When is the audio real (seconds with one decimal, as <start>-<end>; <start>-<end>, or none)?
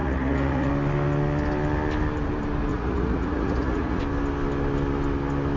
0.7-2.7; 4.0-5.6